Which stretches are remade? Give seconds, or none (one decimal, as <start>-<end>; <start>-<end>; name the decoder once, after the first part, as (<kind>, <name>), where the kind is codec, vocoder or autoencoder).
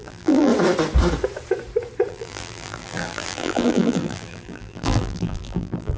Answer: 0.0-0.5 (vocoder, BigVGAN v2); 2.1-6.0